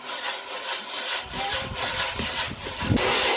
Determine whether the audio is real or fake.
real